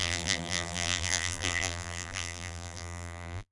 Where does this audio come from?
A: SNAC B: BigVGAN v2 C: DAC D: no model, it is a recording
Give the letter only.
B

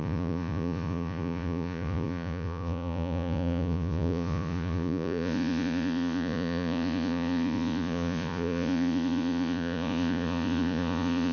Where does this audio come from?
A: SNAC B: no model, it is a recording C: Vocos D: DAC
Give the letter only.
C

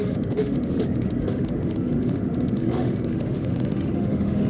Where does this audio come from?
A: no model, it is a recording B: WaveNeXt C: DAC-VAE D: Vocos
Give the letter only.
C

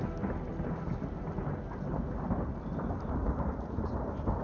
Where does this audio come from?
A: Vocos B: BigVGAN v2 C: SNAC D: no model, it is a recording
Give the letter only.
D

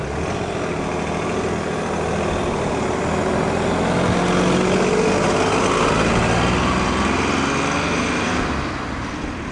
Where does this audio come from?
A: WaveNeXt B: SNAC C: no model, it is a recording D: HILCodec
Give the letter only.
C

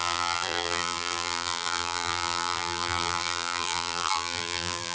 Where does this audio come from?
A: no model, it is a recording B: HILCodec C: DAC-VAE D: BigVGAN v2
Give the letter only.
D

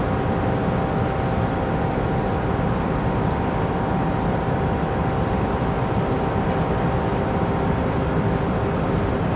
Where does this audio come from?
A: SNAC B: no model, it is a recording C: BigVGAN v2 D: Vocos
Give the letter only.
B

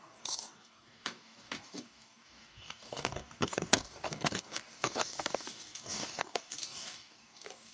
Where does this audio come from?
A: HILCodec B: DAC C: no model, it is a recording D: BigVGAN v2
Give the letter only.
B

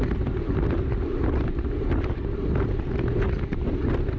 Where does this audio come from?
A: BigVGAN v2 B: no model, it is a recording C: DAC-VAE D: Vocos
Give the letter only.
B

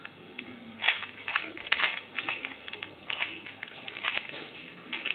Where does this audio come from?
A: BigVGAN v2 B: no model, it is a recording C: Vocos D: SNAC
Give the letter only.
D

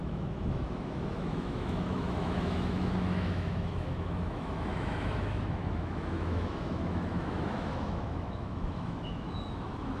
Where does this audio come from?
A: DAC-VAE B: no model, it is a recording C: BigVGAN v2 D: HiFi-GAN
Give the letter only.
A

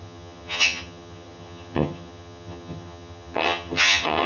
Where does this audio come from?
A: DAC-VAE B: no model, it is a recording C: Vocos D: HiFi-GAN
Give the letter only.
D